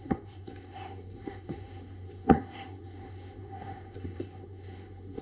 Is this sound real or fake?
fake